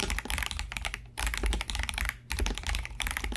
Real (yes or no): yes